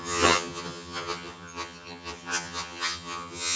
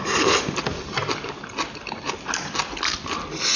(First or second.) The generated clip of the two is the first